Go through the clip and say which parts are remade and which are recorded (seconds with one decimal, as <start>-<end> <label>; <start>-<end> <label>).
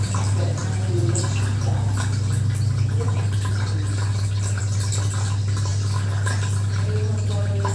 0.0-7.7 recorded